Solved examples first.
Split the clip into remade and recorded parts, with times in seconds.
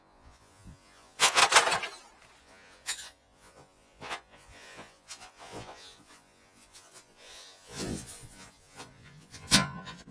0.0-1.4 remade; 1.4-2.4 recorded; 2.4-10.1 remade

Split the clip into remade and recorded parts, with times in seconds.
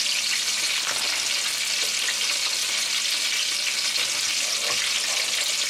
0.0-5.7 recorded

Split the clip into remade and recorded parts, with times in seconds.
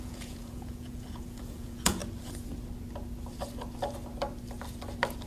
0.0-2.0 remade; 2.0-5.3 recorded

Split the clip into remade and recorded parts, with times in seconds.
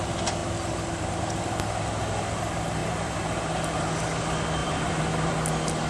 0.0-0.4 recorded; 0.4-1.4 remade; 1.4-2.8 recorded; 2.8-3.4 remade; 3.4-4.6 recorded; 4.6-5.3 remade; 5.3-5.9 recorded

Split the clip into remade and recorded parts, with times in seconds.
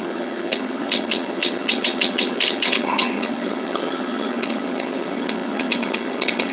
0.0-6.5 remade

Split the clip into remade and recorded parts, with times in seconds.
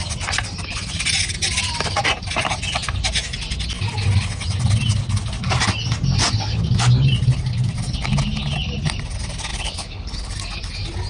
0.0-9.5 recorded; 9.5-10.3 remade; 10.3-11.1 recorded